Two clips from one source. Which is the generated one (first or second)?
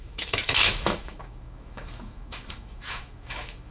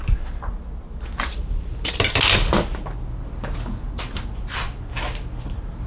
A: first